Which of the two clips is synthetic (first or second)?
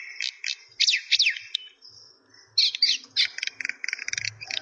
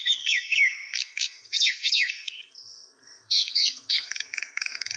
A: second